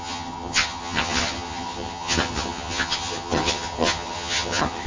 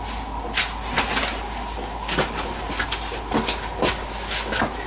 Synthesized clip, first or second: first